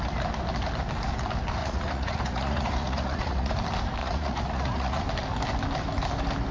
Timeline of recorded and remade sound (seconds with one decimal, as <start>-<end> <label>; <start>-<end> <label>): 0.0-1.6 recorded; 1.6-3.5 remade; 3.5-4.0 recorded; 4.0-5.0 remade; 5.0-6.5 recorded